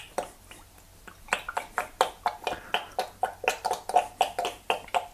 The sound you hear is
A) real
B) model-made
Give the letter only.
A